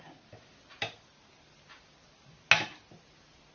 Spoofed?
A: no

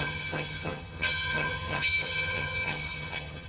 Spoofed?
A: yes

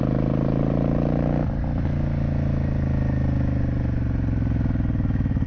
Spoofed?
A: no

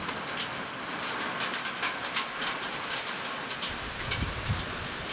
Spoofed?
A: no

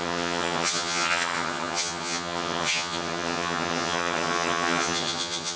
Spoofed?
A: yes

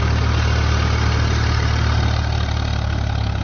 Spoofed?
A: no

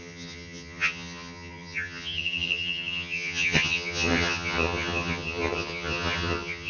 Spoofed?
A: yes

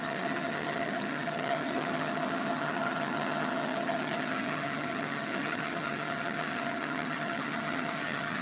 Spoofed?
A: yes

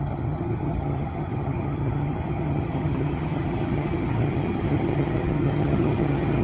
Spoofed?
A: yes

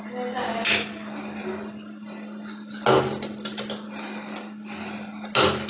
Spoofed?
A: no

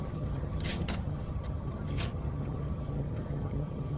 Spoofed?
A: yes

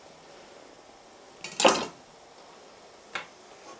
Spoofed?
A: no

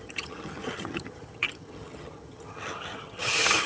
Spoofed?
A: yes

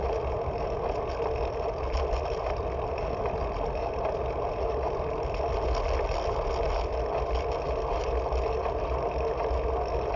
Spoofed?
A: no